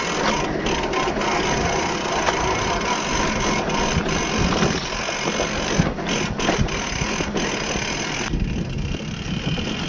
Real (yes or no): yes